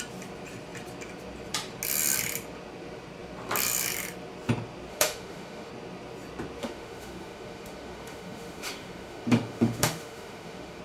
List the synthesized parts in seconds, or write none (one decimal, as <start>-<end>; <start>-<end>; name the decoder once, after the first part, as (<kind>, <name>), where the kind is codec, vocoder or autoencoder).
4.9-5.7 (autoencoder, DAC-VAE); 6.6-10.8